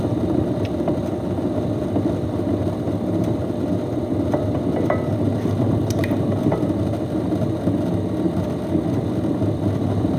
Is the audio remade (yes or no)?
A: no